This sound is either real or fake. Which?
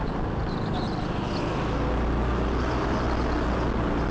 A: real